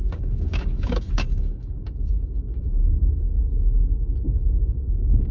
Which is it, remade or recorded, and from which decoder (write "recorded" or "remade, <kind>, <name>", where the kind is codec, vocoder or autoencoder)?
remade, codec, DAC